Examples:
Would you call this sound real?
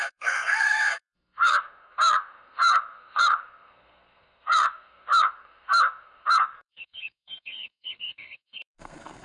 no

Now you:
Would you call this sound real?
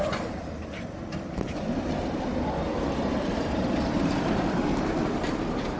no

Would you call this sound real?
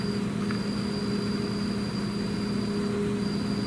yes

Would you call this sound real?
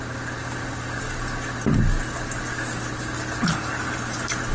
yes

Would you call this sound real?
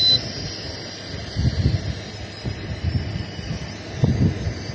yes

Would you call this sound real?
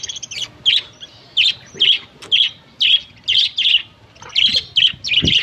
yes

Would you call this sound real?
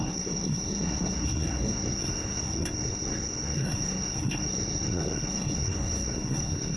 no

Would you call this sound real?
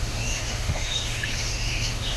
no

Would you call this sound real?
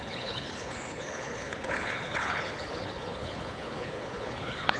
no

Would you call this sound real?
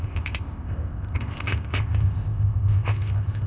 no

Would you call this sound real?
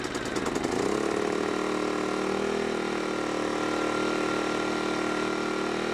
yes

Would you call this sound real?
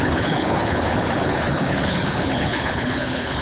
no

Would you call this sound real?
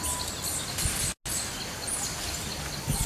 yes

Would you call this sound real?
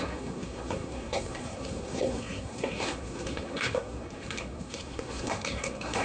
no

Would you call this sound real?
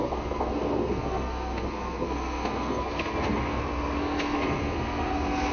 no